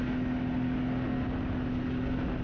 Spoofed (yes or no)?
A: no